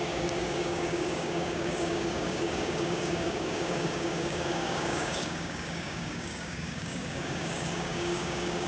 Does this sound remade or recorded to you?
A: remade